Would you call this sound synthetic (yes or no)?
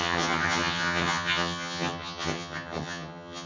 yes